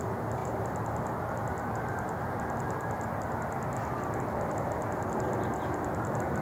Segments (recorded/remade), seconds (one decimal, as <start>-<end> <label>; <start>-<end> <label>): 0.0-6.4 recorded